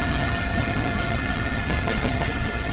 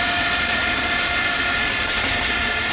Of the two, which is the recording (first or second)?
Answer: second